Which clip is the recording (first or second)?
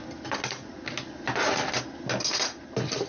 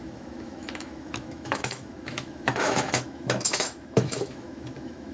first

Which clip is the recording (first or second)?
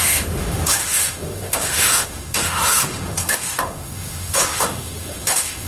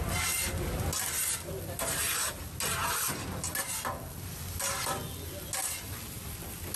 second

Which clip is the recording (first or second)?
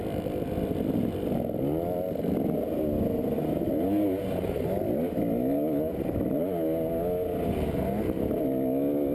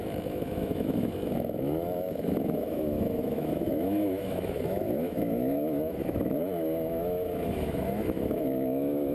first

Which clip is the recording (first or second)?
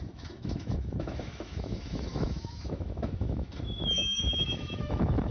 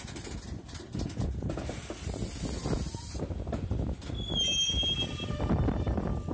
second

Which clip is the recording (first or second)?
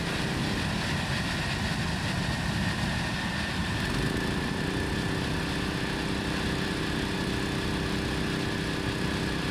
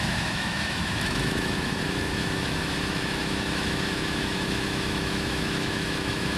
first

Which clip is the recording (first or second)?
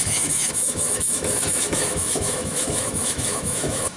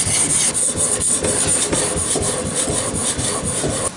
second